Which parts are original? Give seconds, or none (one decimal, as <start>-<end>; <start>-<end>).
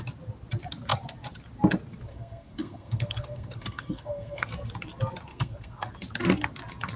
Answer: 0.0-2.1; 4.5-5.3; 5.9-7.0